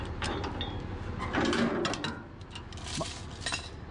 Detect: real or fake real